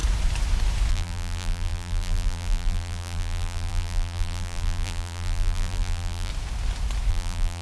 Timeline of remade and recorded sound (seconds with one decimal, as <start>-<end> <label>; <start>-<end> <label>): 0.0-0.9 recorded; 0.9-6.3 remade; 6.3-7.1 recorded; 7.1-7.6 remade